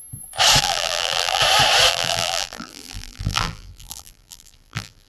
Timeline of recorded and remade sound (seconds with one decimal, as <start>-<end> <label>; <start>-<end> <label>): 0.0-0.6 recorded; 0.6-1.4 remade; 1.4-1.9 recorded; 1.9-5.1 remade